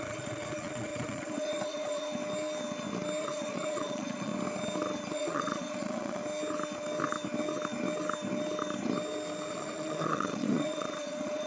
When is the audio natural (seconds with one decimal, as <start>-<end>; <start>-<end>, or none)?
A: 2.1-3.2; 4.3-5.1; 6.2-9.5